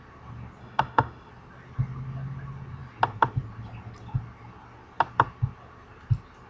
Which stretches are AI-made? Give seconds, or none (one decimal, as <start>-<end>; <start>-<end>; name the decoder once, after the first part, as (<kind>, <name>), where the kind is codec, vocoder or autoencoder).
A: 0.6-1.3 (autoencoder, DAC-VAE)